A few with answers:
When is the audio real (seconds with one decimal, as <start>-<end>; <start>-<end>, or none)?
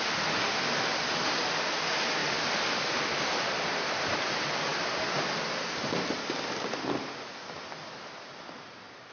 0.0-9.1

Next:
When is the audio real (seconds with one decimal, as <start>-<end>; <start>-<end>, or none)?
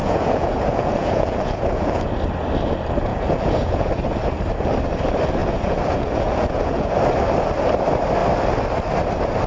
2.1-3.1; 3.9-5.4; 6.9-9.5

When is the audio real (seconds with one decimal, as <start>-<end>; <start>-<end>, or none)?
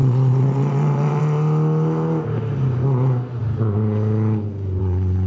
1.2-5.3